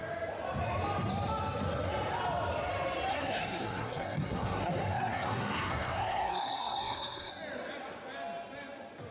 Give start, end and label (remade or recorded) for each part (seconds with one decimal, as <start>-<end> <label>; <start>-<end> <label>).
0.0-3.1 recorded; 3.1-7.3 remade; 7.3-9.1 recorded